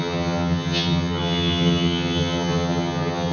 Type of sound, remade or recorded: remade